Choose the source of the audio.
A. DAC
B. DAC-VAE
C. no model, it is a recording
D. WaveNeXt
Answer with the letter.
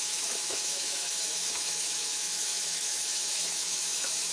B